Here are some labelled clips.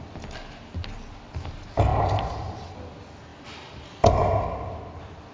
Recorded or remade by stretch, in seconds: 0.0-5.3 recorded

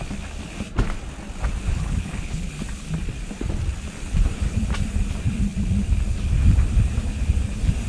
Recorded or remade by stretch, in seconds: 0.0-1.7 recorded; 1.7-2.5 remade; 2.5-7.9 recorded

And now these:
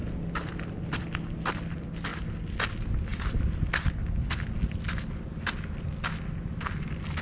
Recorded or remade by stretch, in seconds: 0.0-7.2 recorded